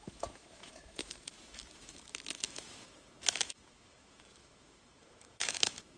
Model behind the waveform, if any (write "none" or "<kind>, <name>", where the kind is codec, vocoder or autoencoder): autoencoder, DAC-VAE